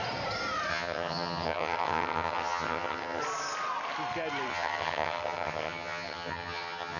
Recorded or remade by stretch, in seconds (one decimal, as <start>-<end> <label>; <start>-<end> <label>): 0.0-0.7 recorded; 0.7-3.2 remade; 3.2-4.5 recorded; 4.5-7.0 remade